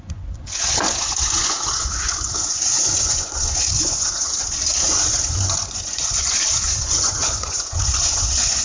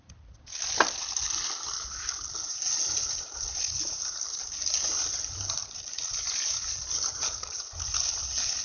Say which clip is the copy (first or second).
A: first